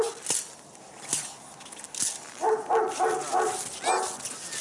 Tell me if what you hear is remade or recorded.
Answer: recorded